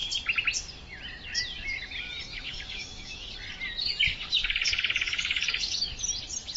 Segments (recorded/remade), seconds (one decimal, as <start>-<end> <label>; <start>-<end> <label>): 0.0-2.3 recorded; 2.3-3.3 remade; 3.3-4.1 recorded; 4.1-6.0 remade; 6.0-6.6 recorded